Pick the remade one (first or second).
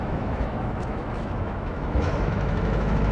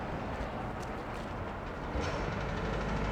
first